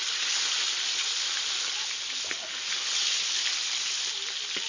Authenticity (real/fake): real